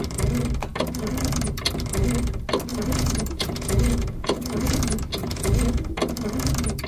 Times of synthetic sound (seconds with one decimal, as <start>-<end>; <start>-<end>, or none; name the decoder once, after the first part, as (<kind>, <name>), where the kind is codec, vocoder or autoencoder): 2.7-4.8 (vocoder, Vocos); 5.2-5.9